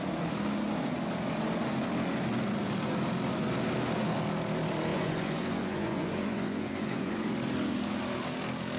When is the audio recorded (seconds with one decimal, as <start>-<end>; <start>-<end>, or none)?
0.0-4.9; 7.1-8.8